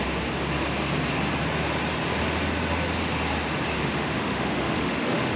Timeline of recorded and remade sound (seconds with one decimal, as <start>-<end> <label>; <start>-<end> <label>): 0.0-3.7 recorded; 3.7-5.4 remade